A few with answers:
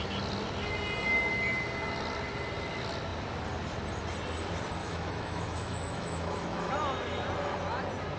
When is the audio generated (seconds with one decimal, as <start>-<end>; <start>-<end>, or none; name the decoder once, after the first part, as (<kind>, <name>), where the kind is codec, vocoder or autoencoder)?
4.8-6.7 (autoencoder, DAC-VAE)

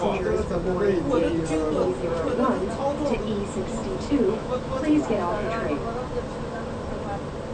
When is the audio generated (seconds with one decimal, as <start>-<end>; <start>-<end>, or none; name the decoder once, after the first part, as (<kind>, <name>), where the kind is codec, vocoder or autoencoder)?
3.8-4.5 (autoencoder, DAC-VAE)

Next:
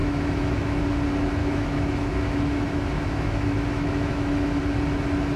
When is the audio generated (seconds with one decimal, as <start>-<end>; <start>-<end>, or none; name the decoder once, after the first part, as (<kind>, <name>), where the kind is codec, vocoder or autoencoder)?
0.0-0.8 (autoencoder, DAC-VAE); 1.4-4.6